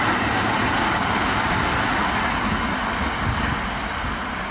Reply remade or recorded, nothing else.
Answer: recorded